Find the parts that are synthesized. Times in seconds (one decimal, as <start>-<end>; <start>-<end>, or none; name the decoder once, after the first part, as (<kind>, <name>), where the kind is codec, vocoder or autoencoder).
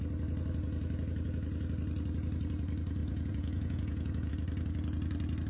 3.0-4.3 (vocoder, Vocos)